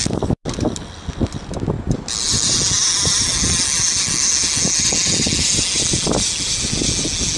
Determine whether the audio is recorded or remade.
recorded